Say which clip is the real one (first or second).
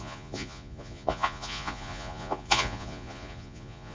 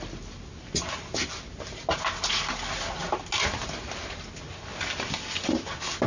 second